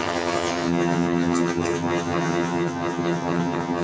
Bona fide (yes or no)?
no